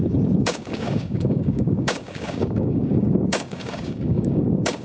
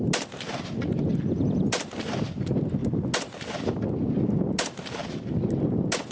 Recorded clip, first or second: second